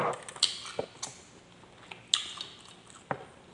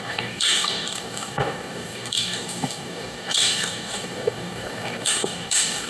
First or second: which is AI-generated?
second